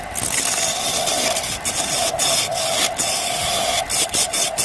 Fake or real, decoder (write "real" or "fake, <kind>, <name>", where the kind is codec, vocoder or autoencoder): real